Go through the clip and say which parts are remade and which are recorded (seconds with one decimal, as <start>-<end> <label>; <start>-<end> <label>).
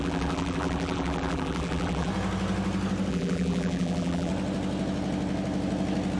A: 0.0-2.1 remade; 2.1-3.1 recorded; 3.1-4.3 remade; 4.3-6.2 recorded